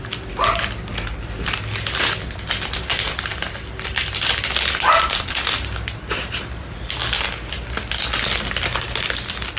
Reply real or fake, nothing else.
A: real